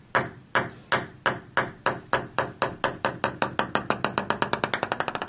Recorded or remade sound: recorded